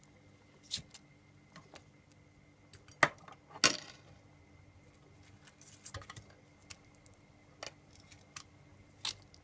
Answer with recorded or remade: recorded